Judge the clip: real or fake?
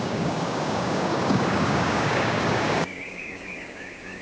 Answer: fake